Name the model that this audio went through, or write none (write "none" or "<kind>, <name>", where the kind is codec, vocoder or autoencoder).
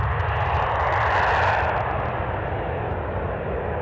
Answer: none